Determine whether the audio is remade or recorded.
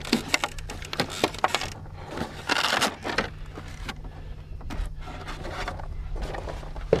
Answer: recorded